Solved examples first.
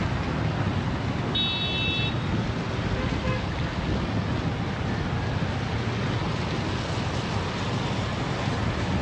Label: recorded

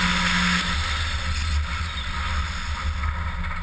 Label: recorded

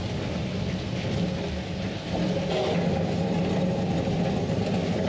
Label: recorded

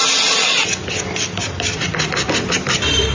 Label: recorded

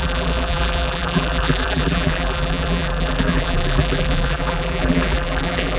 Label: remade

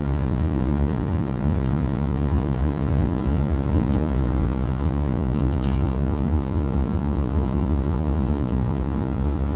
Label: remade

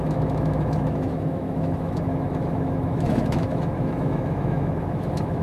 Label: remade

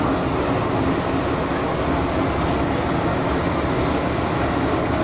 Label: recorded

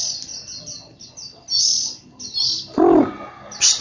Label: recorded